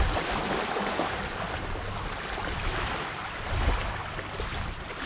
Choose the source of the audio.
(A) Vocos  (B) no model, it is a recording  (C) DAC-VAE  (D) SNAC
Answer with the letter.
B